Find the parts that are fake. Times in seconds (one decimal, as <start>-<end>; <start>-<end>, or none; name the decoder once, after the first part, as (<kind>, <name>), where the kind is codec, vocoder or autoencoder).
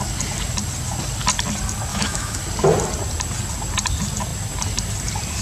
1.9-2.4 (autoencoder, DAC-VAE)